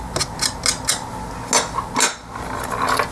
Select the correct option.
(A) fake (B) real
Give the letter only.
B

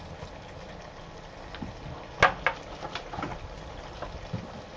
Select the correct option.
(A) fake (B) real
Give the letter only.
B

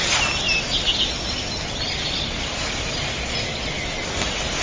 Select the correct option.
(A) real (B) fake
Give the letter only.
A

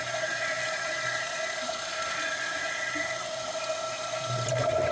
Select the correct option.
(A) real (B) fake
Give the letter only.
A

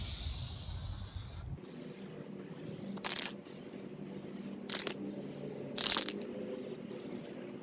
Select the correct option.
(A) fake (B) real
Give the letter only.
B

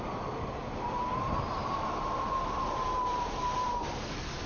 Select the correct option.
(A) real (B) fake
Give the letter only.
A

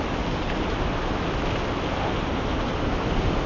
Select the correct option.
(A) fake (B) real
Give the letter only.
B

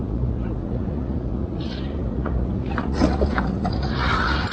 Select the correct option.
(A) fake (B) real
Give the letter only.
A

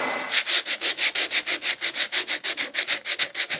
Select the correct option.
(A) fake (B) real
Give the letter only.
B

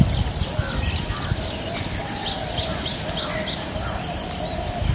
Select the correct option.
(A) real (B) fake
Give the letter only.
A